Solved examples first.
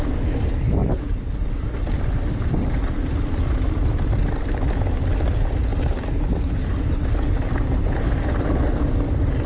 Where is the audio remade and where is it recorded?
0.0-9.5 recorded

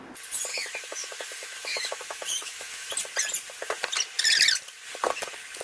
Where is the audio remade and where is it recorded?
0.0-0.5 recorded; 0.5-2.9 remade; 2.9-5.6 recorded

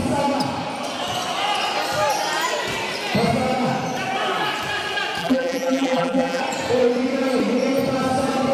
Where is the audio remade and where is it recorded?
0.0-5.2 recorded; 5.2-6.4 remade; 6.4-8.5 recorded

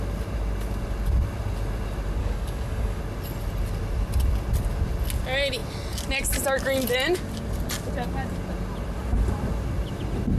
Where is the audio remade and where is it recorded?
0.0-2.2 recorded; 2.2-3.0 remade; 3.0-10.4 recorded

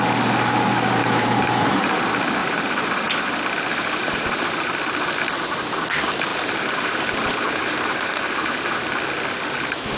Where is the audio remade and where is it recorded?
0.0-1.0 recorded; 1.0-2.0 remade; 2.0-2.4 recorded; 2.4-3.4 remade; 3.4-4.0 recorded; 4.0-4.7 remade; 4.7-6.3 recorded; 6.3-8.8 remade; 8.8-10.0 recorded

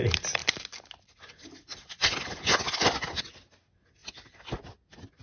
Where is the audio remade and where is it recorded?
0.0-5.2 recorded

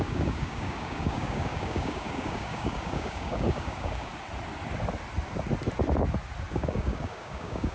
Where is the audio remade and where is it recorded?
0.0-4.1 remade; 4.1-6.5 recorded; 6.5-7.7 remade